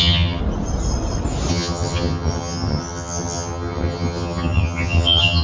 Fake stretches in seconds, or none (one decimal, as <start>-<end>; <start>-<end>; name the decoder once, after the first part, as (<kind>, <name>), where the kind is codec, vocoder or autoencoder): 0.0-0.4 (vocoder, HiFi-GAN); 1.5-5.4